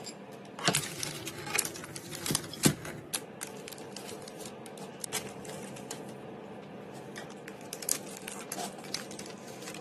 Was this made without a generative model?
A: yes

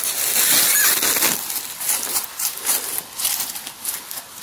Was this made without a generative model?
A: yes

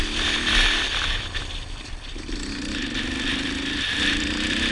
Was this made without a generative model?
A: no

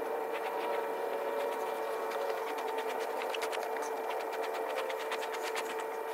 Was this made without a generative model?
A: yes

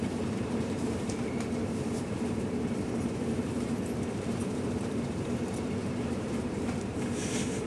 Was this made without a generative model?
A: no